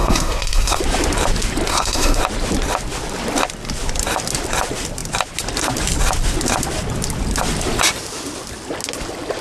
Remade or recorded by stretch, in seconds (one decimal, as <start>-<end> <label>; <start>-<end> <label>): 0.0-0.8 remade; 0.8-1.7 recorded; 1.7-2.2 remade; 2.2-9.4 recorded